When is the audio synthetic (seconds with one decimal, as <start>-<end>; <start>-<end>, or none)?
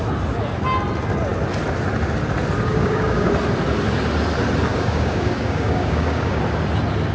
2.7-3.3; 4.7-6.4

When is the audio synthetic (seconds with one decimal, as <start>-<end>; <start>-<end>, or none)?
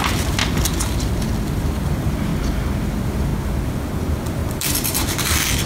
0.0-0.4; 1.1-2.3; 2.9-3.3; 4.0-5.7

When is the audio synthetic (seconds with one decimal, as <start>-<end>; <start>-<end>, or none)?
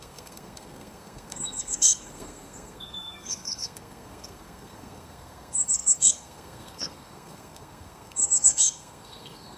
0.0-9.6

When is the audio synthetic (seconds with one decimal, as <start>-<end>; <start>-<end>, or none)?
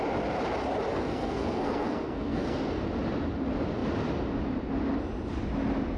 0.9-2.8